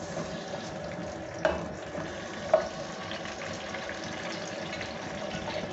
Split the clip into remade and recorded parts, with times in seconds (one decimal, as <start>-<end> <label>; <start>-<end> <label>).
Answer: 0.0-5.7 recorded